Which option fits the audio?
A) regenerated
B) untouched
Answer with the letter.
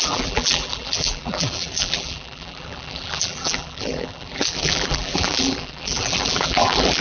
A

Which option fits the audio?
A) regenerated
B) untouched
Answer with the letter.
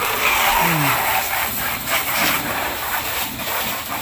A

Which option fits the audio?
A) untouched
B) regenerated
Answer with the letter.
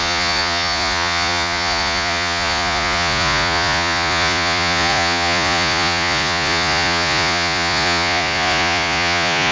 B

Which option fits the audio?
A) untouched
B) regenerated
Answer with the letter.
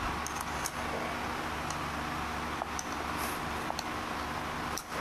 A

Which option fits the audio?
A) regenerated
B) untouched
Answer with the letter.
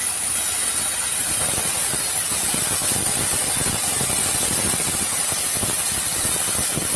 B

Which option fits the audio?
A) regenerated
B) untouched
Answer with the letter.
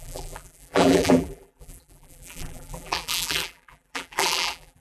A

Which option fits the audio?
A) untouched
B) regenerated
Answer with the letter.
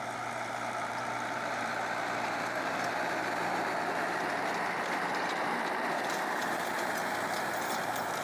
B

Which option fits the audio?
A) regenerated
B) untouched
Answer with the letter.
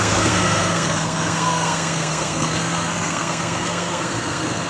A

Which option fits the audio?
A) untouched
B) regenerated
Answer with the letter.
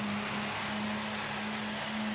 A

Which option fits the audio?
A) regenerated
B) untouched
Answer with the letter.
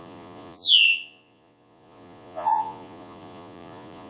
A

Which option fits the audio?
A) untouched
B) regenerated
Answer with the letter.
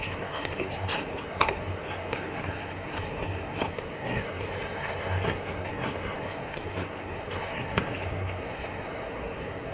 B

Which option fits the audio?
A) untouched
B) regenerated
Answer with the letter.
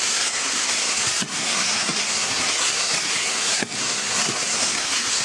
B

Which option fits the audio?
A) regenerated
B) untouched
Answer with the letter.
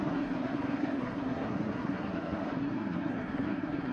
A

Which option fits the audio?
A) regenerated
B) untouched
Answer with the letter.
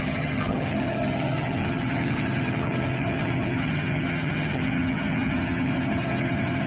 A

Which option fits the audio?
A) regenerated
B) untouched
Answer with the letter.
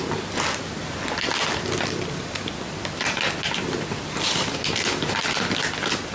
B